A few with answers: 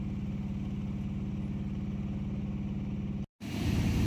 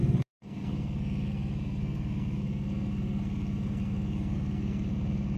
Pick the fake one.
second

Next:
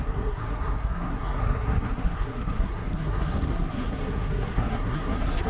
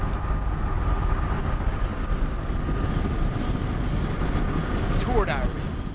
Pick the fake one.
first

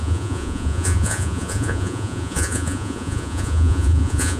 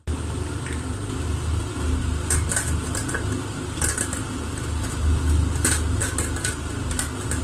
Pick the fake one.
first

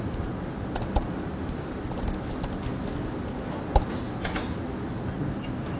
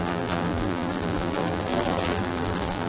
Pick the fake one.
second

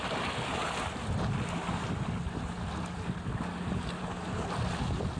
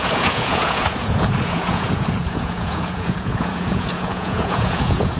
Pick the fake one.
second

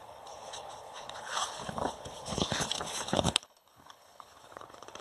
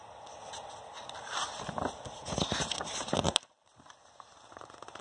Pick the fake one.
first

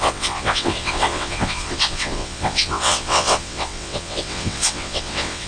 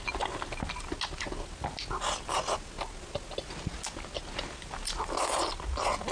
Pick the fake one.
first